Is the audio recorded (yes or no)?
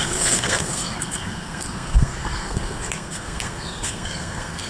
no